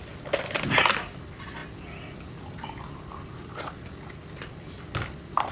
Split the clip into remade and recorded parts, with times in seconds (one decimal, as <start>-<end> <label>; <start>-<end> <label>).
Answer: 0.0-5.5 recorded